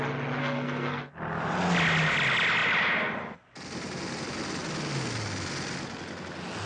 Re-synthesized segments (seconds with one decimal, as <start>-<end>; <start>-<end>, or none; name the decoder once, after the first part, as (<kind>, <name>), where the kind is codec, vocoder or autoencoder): 0.4-1.0 (codec, SNAC)

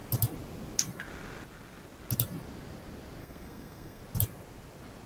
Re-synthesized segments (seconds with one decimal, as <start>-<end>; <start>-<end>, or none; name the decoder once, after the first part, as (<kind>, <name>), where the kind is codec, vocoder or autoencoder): 3.2-4.0 (codec, SNAC)